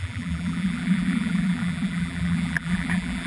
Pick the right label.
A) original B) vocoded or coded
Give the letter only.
B